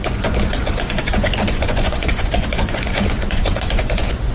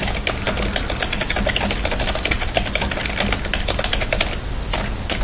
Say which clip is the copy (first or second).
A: first